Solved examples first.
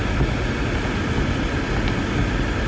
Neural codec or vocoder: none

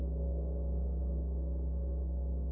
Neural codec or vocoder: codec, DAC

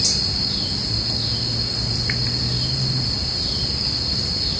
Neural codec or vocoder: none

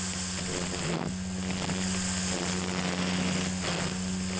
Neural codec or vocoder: none